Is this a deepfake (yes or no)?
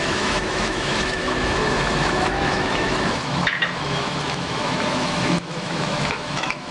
yes